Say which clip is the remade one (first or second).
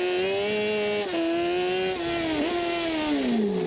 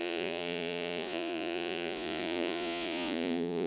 second